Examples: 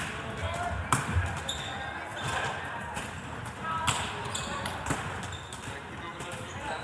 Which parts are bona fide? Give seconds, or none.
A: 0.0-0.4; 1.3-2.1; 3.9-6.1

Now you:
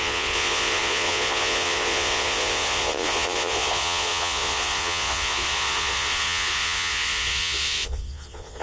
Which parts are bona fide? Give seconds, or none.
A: none